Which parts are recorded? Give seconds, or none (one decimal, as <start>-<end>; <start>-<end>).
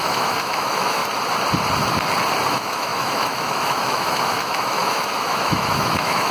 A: 1.0-2.5